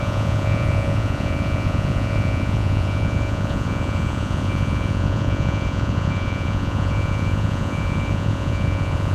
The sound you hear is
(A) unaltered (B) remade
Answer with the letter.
B